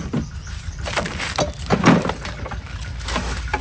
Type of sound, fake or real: real